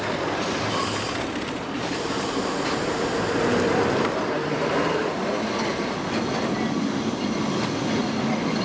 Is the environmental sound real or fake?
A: real